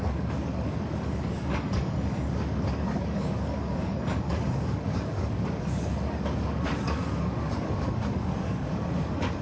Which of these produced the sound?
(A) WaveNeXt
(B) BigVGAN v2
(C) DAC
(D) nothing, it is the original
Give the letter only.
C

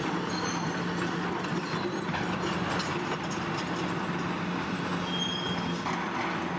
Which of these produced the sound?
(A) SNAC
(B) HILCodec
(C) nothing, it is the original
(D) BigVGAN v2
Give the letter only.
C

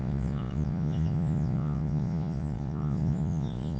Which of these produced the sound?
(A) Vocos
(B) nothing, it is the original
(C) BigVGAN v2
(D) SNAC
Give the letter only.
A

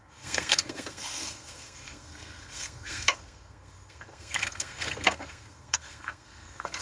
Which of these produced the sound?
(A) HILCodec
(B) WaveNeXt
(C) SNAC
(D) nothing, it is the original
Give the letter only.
C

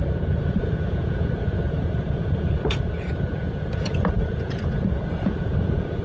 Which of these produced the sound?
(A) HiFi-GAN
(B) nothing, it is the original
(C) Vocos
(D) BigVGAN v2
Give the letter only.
C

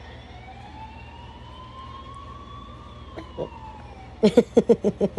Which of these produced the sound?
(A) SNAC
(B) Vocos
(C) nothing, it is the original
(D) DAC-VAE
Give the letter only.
C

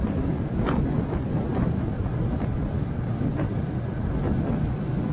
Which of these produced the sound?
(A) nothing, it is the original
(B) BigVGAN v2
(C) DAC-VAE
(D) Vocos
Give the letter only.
A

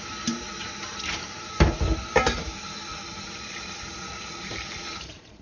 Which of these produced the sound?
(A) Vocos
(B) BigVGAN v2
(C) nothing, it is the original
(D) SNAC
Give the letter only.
B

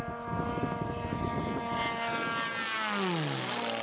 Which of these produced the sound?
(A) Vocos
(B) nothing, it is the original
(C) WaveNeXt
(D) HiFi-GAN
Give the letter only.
B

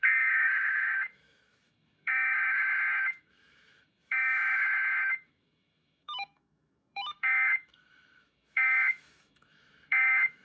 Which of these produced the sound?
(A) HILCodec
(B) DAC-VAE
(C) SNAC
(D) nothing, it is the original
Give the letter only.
B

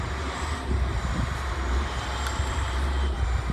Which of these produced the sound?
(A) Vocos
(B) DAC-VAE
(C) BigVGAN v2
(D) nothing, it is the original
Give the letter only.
C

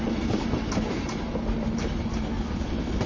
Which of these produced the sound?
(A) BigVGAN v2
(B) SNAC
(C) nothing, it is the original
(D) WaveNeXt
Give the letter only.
C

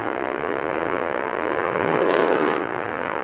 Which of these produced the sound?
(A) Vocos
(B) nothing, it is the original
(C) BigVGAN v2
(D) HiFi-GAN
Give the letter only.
A